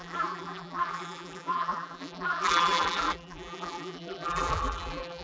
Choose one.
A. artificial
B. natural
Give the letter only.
A